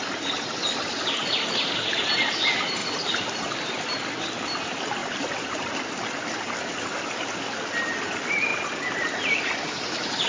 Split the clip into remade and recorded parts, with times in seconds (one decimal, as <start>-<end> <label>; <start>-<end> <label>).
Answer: 0.0-2.8 recorded; 2.8-3.4 remade; 3.4-5.0 recorded; 5.0-5.7 remade; 5.7-10.3 recorded